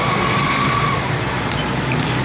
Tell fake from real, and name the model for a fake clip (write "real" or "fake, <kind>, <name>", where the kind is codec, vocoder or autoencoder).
real